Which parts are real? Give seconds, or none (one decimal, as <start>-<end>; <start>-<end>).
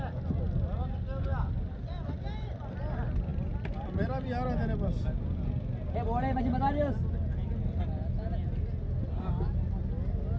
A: 0.0-10.4